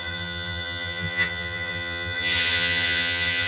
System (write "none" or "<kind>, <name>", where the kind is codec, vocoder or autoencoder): vocoder, HiFi-GAN